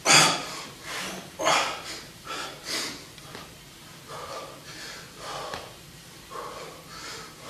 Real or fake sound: real